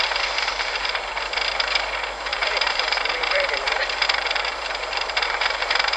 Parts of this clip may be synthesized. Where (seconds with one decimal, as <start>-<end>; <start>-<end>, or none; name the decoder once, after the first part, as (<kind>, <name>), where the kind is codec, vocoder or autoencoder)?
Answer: 0.5-1.2 (vocoder, BigVGAN v2); 2.3-6.0